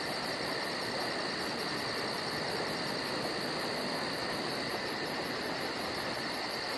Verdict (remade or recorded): recorded